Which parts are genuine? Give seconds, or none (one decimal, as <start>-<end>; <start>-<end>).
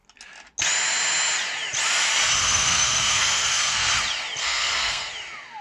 0.0-2.4; 3.9-4.4; 5.1-5.6